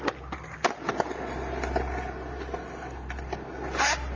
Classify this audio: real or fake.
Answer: real